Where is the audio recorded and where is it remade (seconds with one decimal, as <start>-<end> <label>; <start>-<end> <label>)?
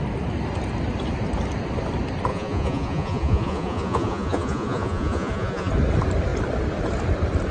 0.0-2.3 recorded; 2.3-5.7 remade; 5.7-7.5 recorded